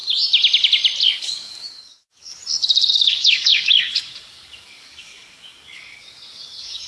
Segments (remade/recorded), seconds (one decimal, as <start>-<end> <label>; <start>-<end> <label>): 0.0-1.2 recorded; 1.2-2.4 remade; 2.4-2.9 recorded; 2.9-6.9 remade